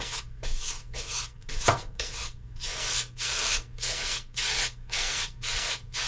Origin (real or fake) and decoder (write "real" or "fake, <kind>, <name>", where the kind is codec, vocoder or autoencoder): fake, codec, SNAC